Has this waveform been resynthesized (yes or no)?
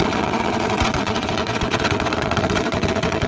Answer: yes